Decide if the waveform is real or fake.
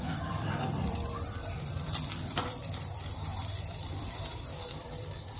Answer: fake